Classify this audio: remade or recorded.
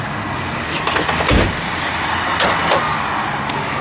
recorded